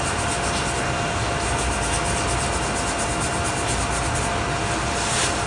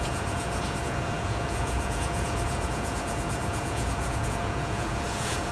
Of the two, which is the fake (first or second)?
second